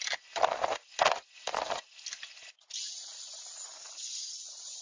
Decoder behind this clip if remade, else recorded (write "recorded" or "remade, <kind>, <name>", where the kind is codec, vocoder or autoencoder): recorded